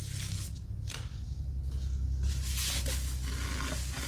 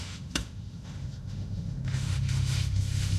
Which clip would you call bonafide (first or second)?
first